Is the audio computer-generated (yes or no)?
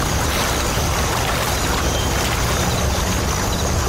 no